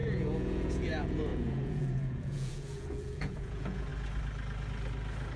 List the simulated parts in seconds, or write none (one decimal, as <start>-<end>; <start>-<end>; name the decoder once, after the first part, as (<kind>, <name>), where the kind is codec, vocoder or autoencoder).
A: 0.0-3.9 (vocoder, Vocos)